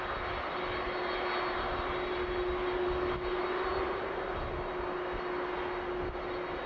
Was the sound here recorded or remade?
recorded